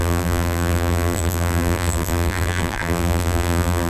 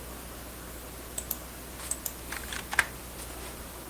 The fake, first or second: first